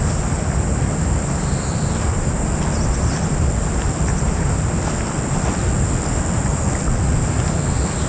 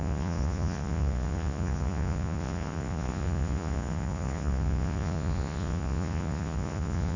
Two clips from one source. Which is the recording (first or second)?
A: first